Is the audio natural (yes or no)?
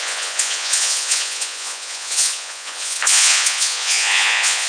no